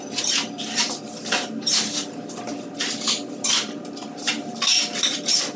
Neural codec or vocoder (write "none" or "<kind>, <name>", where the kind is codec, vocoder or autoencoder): vocoder, BigVGAN v2